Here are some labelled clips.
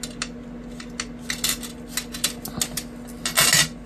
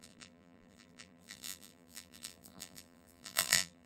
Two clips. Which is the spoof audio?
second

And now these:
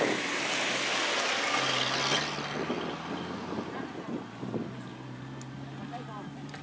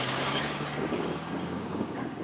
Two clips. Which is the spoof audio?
second